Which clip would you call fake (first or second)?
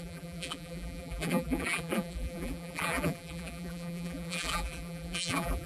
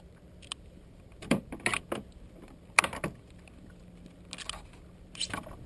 first